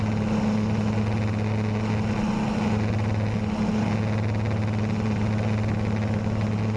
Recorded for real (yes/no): yes